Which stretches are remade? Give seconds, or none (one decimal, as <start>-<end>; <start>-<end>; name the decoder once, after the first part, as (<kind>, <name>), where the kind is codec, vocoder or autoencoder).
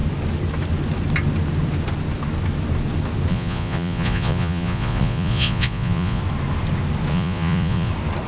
3.3-6.2 (vocoder, Vocos); 7.1-7.9